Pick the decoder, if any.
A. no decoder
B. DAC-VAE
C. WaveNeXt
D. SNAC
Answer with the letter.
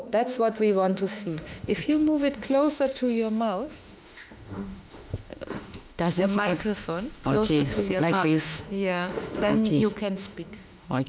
B